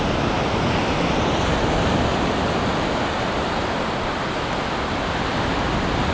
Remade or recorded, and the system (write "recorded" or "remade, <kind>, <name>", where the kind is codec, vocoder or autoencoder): recorded